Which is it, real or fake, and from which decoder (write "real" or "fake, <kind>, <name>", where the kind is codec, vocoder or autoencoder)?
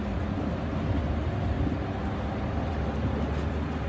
real